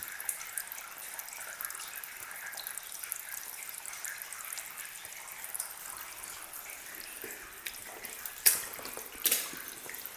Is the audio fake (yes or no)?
no